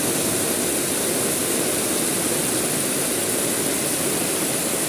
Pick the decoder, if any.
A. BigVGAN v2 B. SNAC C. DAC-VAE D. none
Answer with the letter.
D